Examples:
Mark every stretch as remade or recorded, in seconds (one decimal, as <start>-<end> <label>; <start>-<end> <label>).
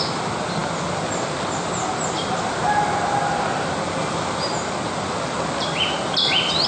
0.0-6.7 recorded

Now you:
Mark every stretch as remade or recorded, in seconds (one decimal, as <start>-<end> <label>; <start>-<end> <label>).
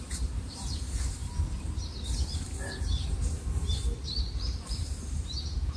0.0-5.8 remade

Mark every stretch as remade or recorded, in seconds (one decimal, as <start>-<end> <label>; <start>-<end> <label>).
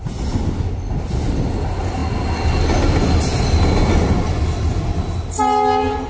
0.0-6.1 recorded